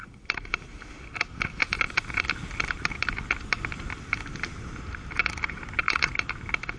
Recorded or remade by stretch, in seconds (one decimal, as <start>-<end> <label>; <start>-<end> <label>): 0.0-6.8 recorded